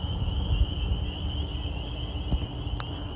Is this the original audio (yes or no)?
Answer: yes